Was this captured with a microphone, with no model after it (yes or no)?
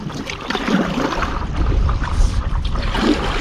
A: no